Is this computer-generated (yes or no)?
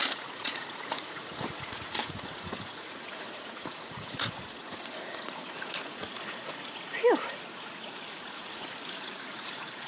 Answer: yes